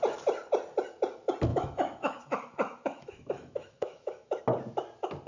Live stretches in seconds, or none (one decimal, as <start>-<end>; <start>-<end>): 0.0-1.5; 4.4-5.3